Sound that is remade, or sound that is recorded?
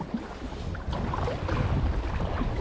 recorded